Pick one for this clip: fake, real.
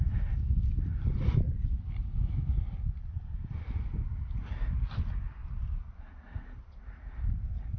real